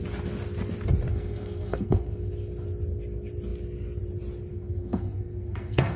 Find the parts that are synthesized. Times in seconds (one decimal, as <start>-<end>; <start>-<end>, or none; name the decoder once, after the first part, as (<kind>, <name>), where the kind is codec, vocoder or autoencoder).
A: 1.1-2.3 (codec, SNAC); 4.5-6.0